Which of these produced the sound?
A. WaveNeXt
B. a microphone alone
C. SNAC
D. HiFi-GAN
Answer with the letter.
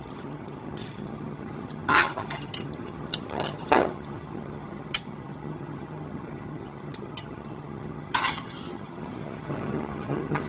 D